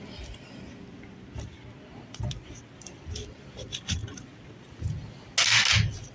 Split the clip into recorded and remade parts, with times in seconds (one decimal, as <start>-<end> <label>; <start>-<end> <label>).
0.0-6.1 recorded